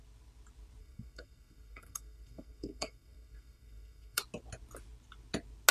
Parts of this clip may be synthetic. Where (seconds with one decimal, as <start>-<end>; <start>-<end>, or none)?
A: 0.8-4.2